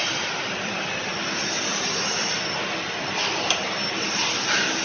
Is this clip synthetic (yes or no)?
no